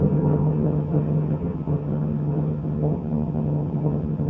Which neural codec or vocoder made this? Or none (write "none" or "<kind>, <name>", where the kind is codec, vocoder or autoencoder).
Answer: vocoder, HiFi-GAN